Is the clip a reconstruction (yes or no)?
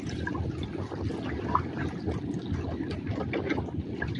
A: no